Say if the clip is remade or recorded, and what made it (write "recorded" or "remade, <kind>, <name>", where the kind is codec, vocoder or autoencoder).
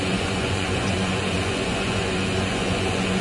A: remade, vocoder, Vocos